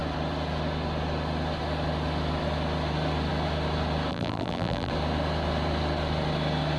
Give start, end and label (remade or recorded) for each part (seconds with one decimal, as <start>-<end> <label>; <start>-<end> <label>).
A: 0.0-4.1 recorded; 4.1-4.9 remade; 4.9-6.8 recorded